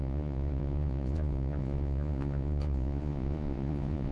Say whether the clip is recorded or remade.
remade